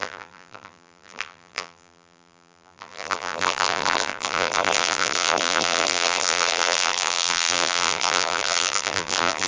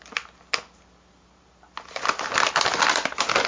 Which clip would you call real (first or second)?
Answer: second